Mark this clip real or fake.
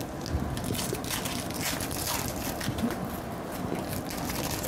real